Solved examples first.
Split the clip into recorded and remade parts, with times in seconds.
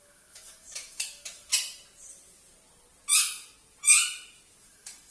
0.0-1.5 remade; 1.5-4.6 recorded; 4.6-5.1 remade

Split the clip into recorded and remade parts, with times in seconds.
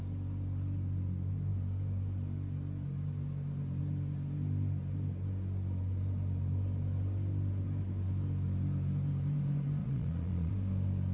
0.0-9.8 recorded; 9.8-10.5 remade; 10.5-11.1 recorded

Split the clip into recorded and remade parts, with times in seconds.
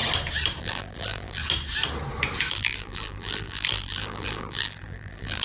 0.0-0.6 recorded; 0.6-1.4 remade; 1.4-2.5 recorded; 2.5-5.4 remade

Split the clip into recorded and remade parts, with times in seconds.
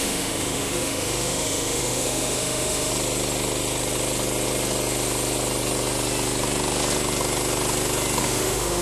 0.0-2.9 remade; 2.9-8.2 recorded; 8.2-8.8 remade